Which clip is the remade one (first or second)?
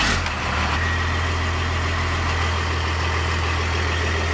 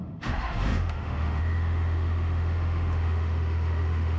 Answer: second